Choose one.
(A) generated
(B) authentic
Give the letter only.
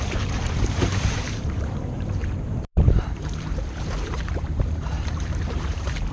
A